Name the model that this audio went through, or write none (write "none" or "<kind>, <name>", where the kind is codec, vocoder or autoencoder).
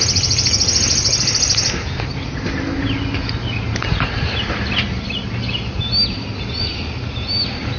none